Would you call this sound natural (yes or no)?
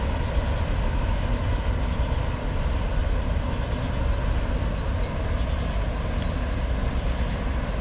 yes